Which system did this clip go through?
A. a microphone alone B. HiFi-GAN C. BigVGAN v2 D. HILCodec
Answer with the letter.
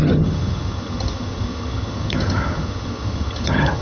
B